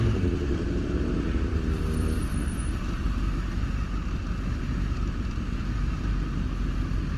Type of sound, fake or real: fake